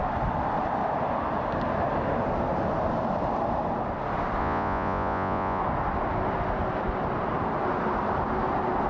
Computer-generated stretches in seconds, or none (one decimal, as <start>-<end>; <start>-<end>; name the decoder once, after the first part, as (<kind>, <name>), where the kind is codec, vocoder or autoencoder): 4.4-5.6 (vocoder, Vocos)